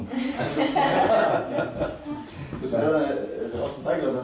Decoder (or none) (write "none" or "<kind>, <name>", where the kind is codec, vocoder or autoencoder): none